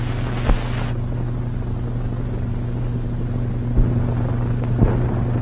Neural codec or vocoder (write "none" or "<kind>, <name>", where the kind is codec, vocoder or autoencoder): none